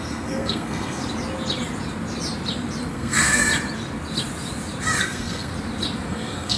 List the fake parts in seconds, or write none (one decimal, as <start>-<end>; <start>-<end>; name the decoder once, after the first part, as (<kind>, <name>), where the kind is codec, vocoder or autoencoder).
0.0-1.0 (codec, SNAC); 2.9-3.4; 5.0-5.5; 6.1-6.6